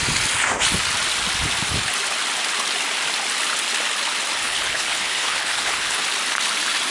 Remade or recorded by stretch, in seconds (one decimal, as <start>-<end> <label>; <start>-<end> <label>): 0.0-4.4 recorded; 4.4-6.0 remade; 6.0-6.9 recorded